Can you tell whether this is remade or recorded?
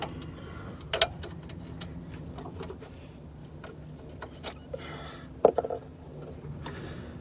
recorded